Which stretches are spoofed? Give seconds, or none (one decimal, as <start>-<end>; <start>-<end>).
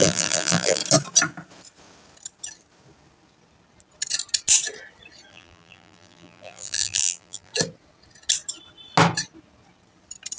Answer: 0.0-0.8; 5.3-7.5